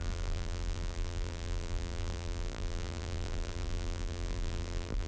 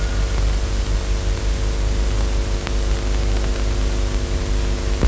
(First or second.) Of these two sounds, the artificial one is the first